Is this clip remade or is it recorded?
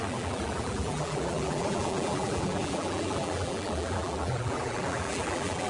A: remade